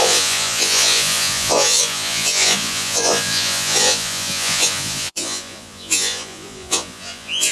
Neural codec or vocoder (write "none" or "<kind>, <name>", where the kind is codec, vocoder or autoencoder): vocoder, Vocos